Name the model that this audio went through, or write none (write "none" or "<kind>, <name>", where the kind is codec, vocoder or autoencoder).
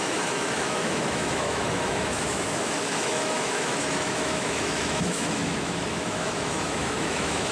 autoencoder, DAC-VAE